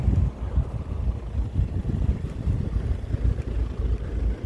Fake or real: real